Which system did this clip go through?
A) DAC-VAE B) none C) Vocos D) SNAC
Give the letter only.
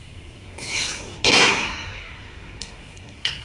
D